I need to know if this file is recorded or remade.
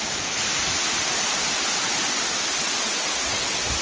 recorded